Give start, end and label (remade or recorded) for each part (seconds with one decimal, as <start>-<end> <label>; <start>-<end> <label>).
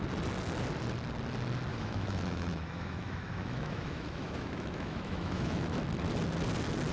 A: 0.0-1.7 recorded; 1.7-5.8 remade; 5.8-6.9 recorded